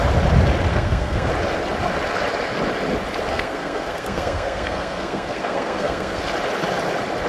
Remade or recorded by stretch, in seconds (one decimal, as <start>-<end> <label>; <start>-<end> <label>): 0.0-0.7 recorded; 0.7-1.3 remade; 1.3-3.3 recorded; 3.3-6.2 remade; 6.2-7.3 recorded